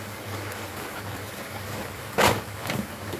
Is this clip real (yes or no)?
no